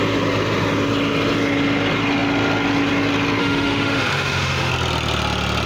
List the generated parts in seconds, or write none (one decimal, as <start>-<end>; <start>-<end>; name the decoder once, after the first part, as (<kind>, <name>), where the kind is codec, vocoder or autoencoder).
3.4-4.7 (autoencoder, DAC-VAE)